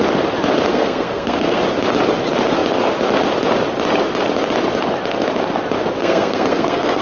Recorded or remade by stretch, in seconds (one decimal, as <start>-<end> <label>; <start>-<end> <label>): 0.0-0.7 recorded; 0.7-1.6 remade; 1.6-6.0 recorded; 6.0-7.0 remade